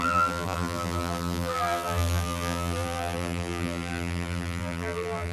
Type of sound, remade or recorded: remade